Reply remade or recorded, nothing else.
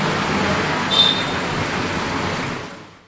recorded